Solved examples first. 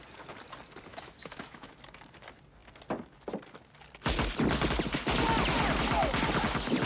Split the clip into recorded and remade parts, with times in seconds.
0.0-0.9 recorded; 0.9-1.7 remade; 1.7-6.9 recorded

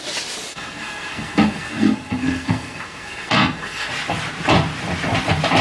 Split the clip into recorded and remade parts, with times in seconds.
0.0-0.5 recorded; 0.5-3.9 remade; 3.9-5.6 recorded

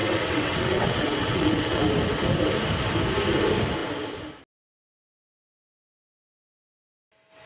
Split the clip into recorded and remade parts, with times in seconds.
0.0-1.8 remade; 1.8-7.5 recorded

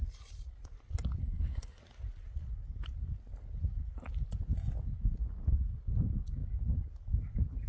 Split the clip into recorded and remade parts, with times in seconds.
0.0-1.2 recorded; 1.2-1.8 remade; 1.8-7.7 recorded

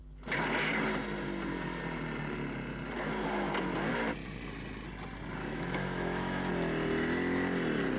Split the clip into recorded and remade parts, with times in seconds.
0.0-5.4 recorded; 5.4-6.5 remade; 6.5-8.0 recorded